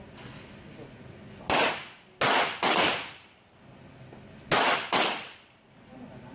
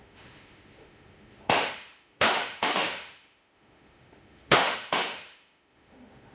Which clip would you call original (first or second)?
first